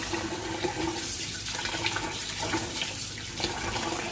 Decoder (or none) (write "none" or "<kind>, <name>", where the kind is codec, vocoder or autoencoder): vocoder, BigVGAN v2